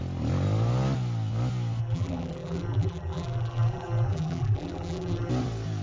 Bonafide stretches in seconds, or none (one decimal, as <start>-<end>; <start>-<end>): 0.0-1.8; 5.3-5.8